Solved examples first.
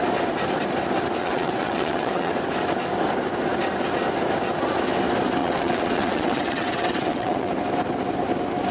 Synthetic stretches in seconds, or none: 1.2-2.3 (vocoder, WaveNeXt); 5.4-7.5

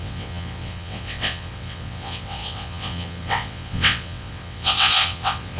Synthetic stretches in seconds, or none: 0.0-5.6 (vocoder, WaveNeXt)

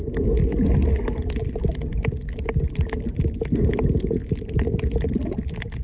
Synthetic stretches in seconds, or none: none

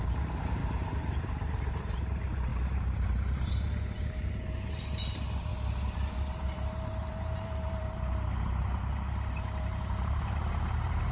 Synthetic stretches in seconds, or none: 0.0-11.1 (vocoder, BigVGAN v2)

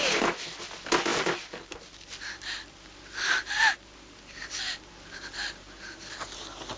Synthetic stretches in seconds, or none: 1.1-5.2 (vocoder, BigVGAN v2)